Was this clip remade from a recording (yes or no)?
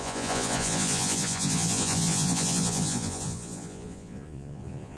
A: yes